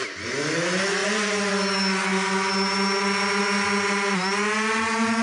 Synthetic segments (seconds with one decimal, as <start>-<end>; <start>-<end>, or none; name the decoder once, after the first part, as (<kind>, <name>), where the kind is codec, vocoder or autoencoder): none